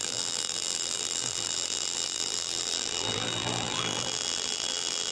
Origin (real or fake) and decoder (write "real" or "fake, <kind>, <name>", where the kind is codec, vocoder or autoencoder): fake, vocoder, BigVGAN v2